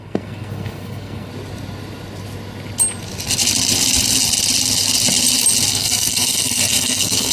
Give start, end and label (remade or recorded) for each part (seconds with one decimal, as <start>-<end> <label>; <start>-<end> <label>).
0.0-1.3 remade; 1.3-5.7 recorded; 5.7-7.3 remade